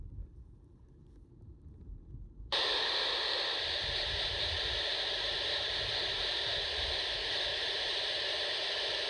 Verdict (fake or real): fake